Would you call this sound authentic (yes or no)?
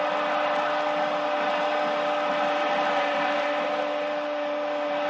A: yes